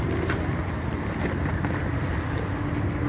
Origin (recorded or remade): recorded